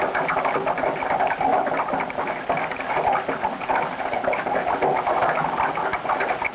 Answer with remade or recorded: recorded